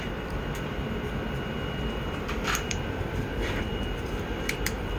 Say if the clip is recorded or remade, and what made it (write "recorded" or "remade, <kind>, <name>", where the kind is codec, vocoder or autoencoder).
remade, vocoder, BigVGAN v2